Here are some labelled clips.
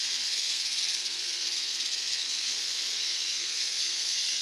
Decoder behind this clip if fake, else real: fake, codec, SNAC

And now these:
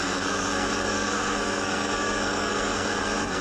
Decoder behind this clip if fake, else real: fake, codec, SNAC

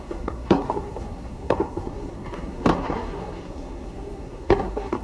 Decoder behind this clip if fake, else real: fake, codec, SNAC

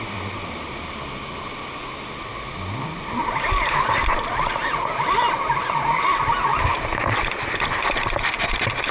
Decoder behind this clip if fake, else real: real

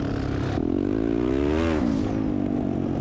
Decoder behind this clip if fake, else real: real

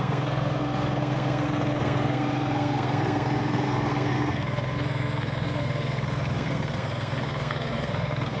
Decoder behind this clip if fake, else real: fake, codec, SNAC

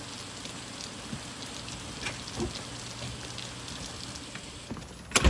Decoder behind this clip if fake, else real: real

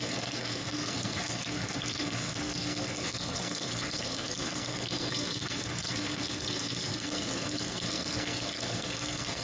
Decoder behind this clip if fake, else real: fake, codec, SNAC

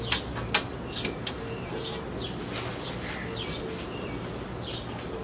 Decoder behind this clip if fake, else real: real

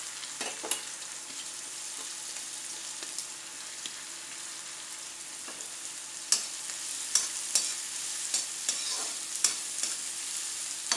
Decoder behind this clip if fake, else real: real